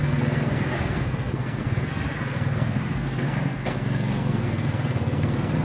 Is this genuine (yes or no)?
no